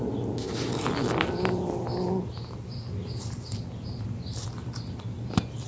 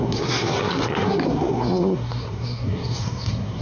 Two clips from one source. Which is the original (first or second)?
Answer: first